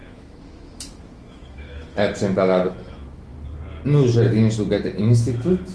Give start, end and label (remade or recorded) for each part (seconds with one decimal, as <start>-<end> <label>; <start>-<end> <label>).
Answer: 0.0-3.3 remade; 3.3-4.8 recorded; 4.8-5.7 remade